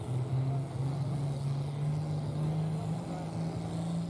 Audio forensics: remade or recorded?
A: recorded